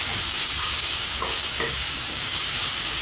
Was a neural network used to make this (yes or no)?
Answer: yes